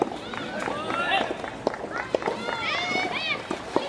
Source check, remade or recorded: recorded